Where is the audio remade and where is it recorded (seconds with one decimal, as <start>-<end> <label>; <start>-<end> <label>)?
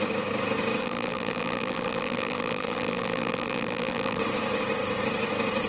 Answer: 0.0-0.8 recorded; 0.8-4.2 remade; 4.2-5.7 recorded